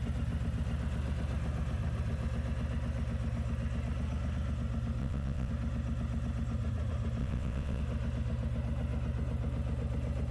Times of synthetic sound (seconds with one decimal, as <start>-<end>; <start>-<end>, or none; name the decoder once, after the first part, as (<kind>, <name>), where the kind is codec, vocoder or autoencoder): 5.0-5.5 (vocoder, WaveNeXt); 7.2-7.8